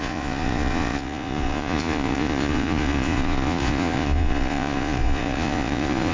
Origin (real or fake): fake